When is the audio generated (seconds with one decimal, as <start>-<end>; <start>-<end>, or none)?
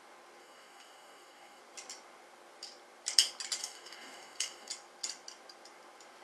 0.4-1.6; 3.6-4.7